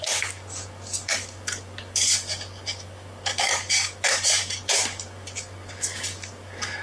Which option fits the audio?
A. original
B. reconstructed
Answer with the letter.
B